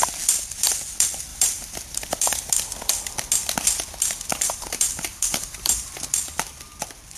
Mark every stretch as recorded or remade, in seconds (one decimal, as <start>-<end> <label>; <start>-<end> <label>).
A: 0.0-1.3 recorded; 1.3-2.5 remade; 2.5-4.3 recorded; 4.3-5.9 remade; 5.9-7.2 recorded